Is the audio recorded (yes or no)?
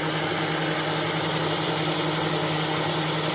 yes